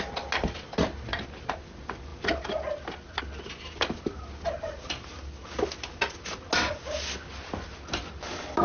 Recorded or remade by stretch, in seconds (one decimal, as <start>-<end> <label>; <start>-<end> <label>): 0.0-8.6 recorded